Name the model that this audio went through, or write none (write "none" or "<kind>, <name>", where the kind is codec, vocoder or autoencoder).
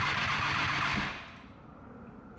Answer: none